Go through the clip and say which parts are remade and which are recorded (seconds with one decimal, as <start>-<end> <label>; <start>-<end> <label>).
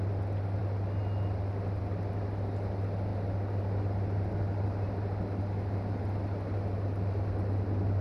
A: 0.0-8.0 recorded